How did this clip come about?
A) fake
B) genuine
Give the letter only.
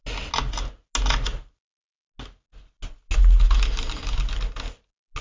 B